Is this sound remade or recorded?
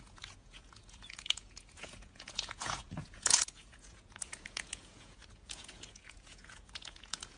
remade